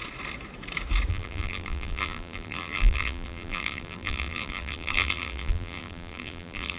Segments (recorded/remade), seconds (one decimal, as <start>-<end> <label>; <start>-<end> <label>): 0.0-1.1 recorded; 1.1-6.8 remade